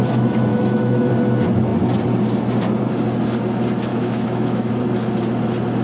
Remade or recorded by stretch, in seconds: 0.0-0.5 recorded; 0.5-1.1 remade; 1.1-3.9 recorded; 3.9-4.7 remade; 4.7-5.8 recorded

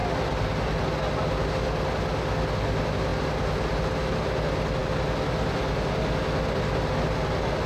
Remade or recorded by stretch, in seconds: 0.0-7.7 recorded

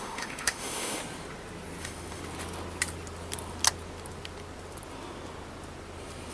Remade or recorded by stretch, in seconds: 0.0-1.0 remade; 1.0-1.8 recorded; 1.8-2.2 remade; 2.2-6.3 recorded

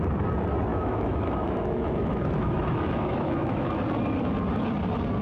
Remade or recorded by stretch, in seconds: 0.0-0.7 recorded; 0.7-3.8 remade; 3.8-5.2 recorded

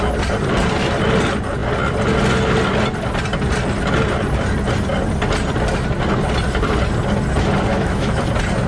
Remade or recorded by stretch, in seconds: 0.0-7.7 recorded; 7.7-8.2 remade; 8.2-8.7 recorded